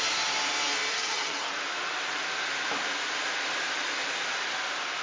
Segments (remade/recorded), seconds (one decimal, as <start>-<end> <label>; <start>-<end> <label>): 0.0-0.9 recorded; 0.9-1.5 remade; 1.5-5.0 recorded